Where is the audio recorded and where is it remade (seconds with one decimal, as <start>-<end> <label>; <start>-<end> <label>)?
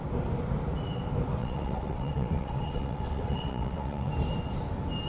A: 0.0-1.4 recorded; 1.4-4.1 remade; 4.1-5.1 recorded